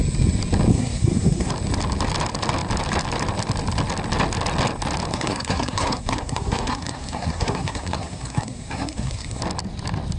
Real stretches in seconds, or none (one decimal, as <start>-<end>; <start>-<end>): 0.0-0.7; 1.5-5.1; 9.4-10.2